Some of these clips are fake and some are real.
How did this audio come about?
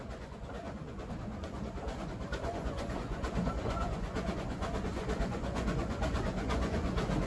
fake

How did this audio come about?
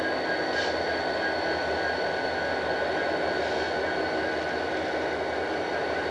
real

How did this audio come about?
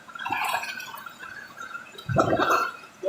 fake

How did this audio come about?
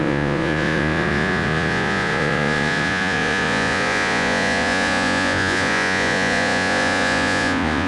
fake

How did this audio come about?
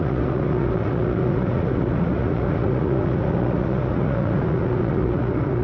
fake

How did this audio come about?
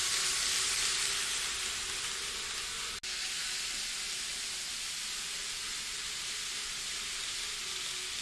real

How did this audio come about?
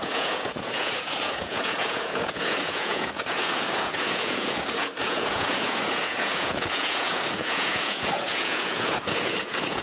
fake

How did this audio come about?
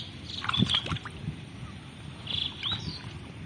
real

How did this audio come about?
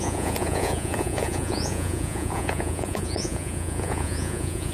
fake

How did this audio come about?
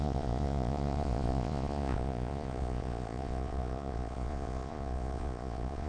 fake